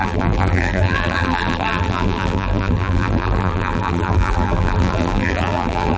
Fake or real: fake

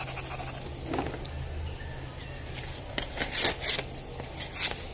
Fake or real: real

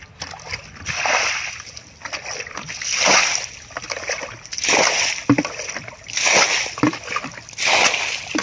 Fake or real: real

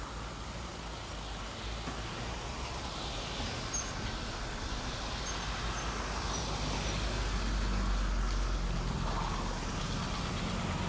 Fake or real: real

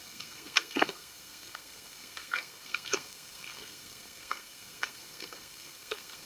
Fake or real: fake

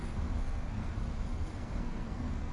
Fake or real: fake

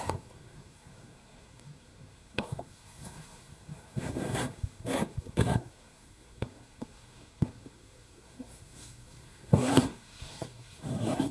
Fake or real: fake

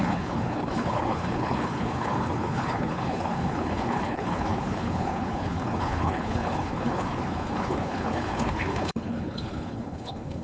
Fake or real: fake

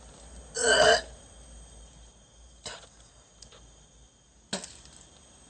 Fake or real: real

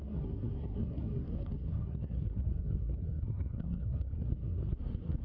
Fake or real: fake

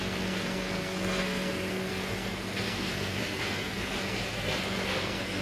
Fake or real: fake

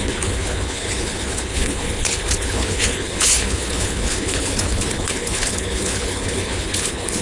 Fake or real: fake